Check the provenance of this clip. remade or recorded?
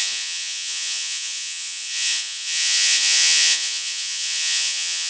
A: remade